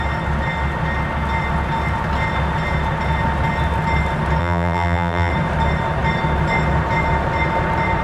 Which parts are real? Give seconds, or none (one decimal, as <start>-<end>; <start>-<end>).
0.0-4.4; 5.3-8.0